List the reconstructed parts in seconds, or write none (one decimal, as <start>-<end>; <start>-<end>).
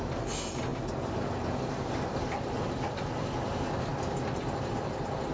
none